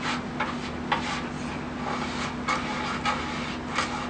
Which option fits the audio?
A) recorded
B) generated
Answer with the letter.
A